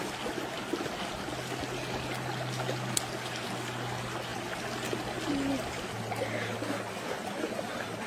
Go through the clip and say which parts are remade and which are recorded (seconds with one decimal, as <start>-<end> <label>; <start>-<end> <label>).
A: 0.0-8.1 recorded